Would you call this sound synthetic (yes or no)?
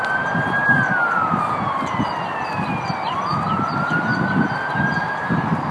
no